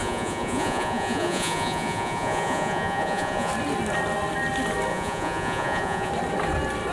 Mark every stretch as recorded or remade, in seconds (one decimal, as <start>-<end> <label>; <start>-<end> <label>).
0.0-3.5 remade; 3.5-4.9 recorded; 4.9-6.1 remade; 6.1-6.9 recorded